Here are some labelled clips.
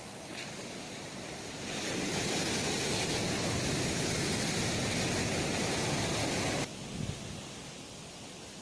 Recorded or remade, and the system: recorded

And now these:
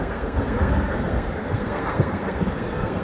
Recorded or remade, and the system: remade, codec, SNAC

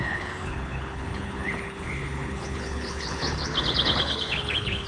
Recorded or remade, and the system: remade, codec, HILCodec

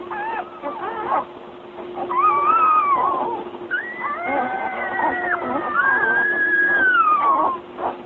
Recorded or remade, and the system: recorded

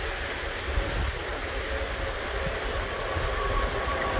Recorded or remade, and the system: recorded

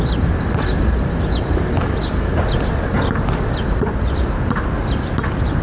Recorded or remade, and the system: recorded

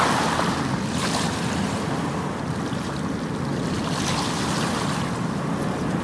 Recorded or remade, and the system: recorded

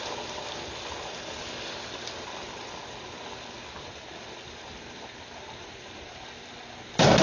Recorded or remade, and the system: recorded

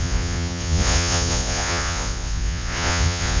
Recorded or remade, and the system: remade, vocoder, Vocos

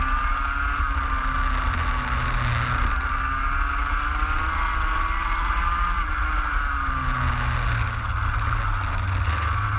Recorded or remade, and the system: recorded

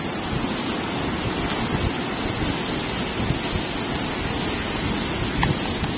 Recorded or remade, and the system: recorded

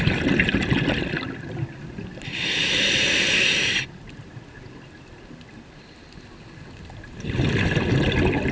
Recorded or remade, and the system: recorded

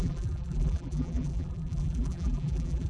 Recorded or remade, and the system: remade, vocoder, BigVGAN v2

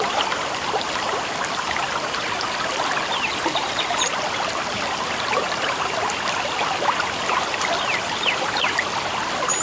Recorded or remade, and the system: remade, vocoder, BigVGAN v2